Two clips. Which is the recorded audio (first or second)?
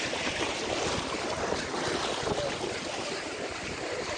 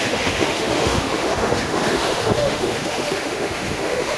first